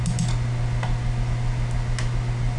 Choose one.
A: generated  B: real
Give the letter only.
B